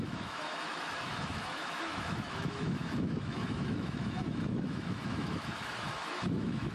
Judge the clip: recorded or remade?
remade